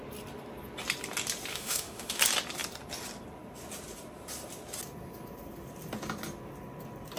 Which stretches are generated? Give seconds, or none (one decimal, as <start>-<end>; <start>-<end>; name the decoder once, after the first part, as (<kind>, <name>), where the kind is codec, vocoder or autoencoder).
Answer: 1.5-2.2 (autoencoder, DAC-VAE)